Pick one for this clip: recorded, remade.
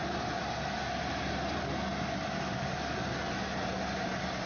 recorded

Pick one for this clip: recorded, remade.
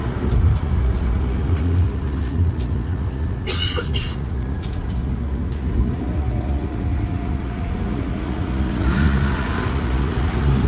remade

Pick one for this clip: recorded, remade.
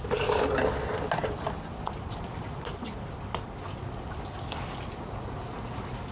recorded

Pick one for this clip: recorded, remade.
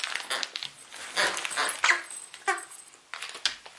recorded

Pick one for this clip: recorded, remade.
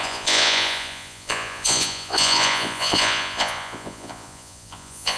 remade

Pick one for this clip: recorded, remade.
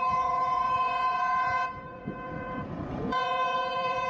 remade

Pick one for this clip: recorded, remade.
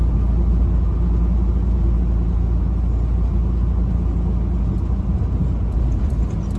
recorded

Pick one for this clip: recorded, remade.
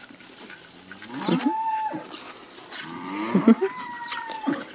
recorded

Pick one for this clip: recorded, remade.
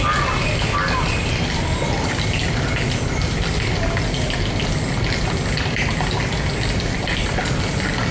recorded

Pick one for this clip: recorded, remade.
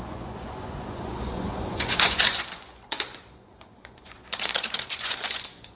remade